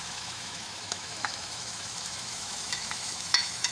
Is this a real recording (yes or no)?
no